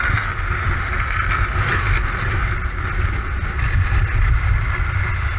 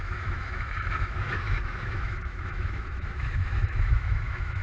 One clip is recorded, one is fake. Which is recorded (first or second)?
first